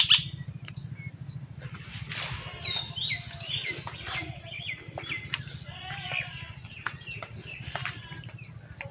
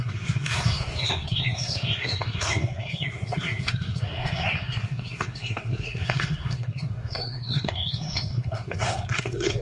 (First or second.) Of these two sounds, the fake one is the second